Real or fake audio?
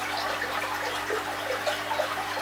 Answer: real